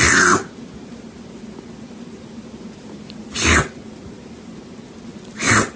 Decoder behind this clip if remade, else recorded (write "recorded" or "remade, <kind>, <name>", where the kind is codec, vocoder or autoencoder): recorded